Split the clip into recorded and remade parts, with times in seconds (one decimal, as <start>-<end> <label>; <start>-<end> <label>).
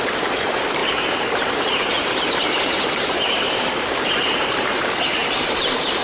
0.0-6.0 remade